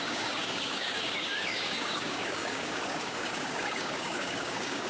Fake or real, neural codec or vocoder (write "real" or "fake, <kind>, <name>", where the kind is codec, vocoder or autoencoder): fake, codec, DAC